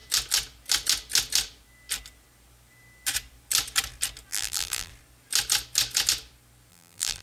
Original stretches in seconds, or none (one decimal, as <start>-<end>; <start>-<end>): 0.0-4.3; 4.9-6.7